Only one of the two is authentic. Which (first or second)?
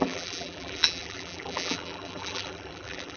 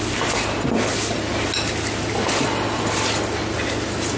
second